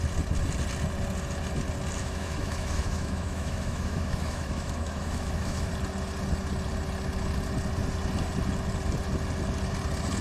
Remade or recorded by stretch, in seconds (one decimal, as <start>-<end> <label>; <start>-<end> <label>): 0.0-2.0 recorded; 2.0-5.7 remade; 5.7-10.2 recorded